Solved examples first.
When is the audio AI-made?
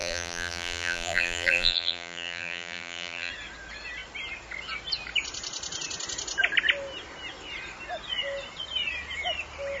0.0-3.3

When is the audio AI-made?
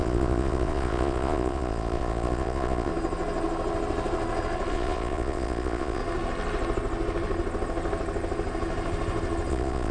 0.0-2.9; 4.7-6.0; 9.5-9.9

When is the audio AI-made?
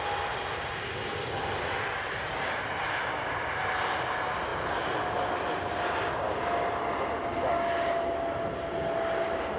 none